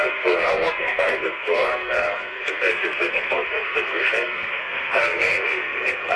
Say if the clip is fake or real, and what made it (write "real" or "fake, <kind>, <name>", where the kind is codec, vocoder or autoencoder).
fake, codec, SNAC